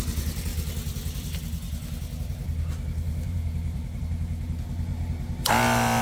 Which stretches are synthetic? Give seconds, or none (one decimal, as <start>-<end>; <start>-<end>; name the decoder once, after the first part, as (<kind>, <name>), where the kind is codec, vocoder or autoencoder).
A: 0.5-4.0 (vocoder, BigVGAN v2)